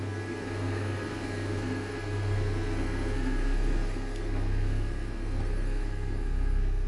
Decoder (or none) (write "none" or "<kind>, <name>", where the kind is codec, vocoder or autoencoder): codec, SNAC